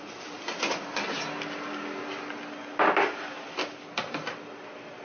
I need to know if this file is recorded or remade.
recorded